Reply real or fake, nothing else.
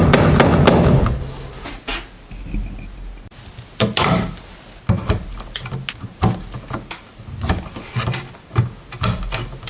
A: real